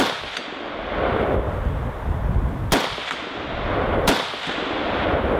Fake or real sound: real